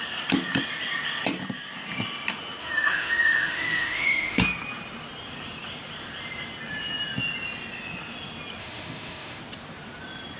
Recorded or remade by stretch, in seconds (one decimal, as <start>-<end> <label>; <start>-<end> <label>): 0.0-2.6 recorded; 2.6-4.4 remade; 4.4-8.6 recorded; 8.6-9.4 remade; 9.4-10.4 recorded